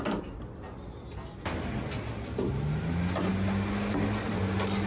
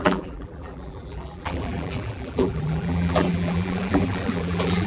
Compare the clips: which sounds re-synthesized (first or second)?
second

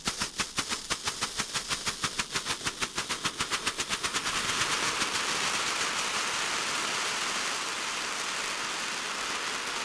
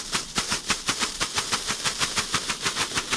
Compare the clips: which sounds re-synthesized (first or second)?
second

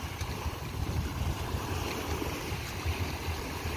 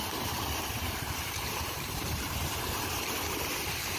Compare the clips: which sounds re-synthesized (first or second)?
second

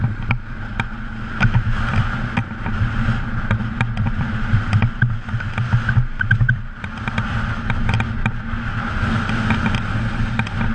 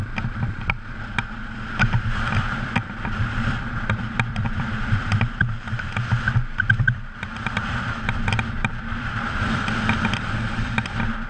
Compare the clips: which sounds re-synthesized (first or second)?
second